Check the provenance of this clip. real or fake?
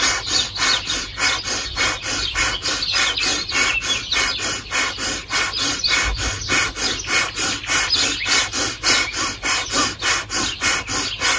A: real